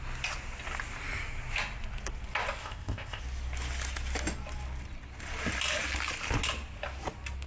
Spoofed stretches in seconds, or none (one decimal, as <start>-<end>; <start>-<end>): 2.6-3.2